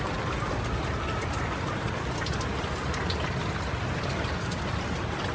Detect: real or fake real